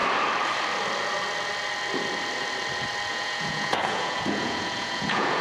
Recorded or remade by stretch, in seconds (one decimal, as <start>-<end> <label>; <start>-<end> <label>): 0.0-3.1 recorded; 3.1-5.4 remade